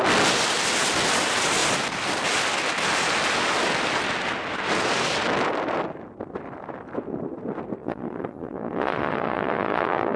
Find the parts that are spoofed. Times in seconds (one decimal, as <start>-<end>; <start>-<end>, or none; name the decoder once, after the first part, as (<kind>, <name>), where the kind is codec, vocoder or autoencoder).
7.8-10.2 (vocoder, Vocos)